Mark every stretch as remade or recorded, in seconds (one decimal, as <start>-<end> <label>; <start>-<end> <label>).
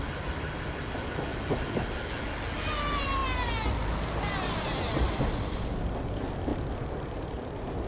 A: 0.0-7.9 recorded